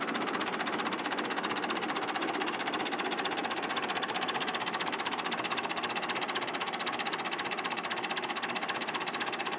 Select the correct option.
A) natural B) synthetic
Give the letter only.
A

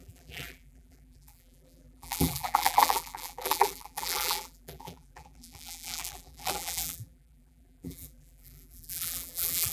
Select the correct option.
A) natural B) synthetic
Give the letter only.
B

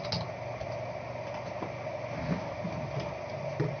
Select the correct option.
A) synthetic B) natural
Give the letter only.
B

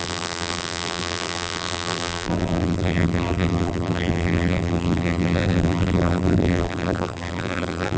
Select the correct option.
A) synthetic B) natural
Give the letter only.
A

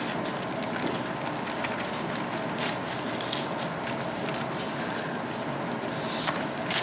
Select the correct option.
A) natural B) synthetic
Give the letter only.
A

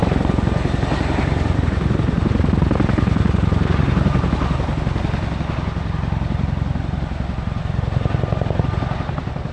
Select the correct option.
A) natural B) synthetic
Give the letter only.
A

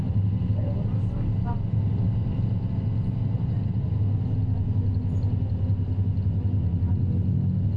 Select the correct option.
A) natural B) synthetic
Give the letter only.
A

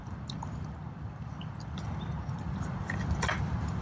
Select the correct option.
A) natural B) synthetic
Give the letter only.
B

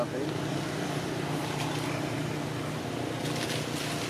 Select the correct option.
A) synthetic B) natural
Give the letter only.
B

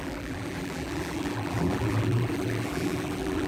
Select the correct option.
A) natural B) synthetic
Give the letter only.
B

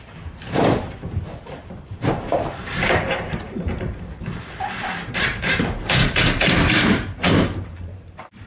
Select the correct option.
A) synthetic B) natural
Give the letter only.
A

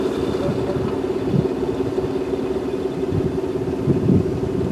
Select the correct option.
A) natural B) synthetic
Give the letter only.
A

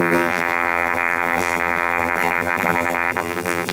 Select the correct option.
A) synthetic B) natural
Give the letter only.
A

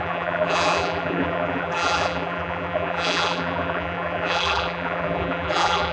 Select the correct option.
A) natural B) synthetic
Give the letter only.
B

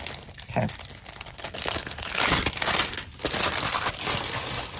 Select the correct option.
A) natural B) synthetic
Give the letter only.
A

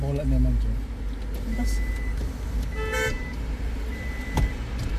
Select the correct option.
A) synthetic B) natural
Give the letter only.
B